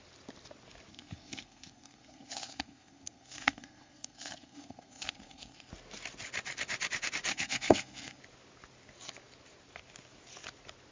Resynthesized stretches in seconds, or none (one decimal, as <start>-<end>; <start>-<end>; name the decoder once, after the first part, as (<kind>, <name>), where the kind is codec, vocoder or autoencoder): 0.9-5.7 (codec, SNAC); 7.3-8.2

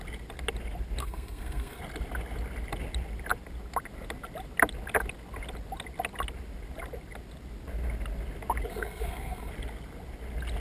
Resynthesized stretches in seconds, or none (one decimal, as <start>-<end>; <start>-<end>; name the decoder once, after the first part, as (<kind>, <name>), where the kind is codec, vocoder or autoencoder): 1.0-1.8 (codec, SNAC); 8.7-9.5

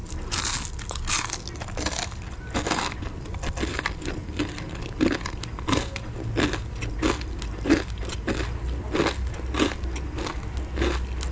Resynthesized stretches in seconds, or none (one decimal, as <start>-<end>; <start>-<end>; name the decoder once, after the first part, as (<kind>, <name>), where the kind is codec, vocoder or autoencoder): none

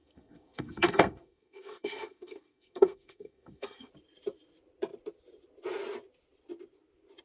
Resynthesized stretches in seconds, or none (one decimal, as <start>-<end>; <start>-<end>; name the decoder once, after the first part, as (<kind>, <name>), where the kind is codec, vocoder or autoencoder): 0.0-3.9 (codec, SNAC)

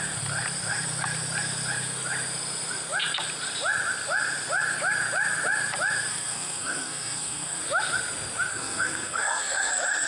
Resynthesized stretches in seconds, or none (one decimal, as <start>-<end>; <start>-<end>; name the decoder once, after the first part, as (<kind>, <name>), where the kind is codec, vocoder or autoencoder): 6.1-7.6 (codec, SNAC); 8.5-9.7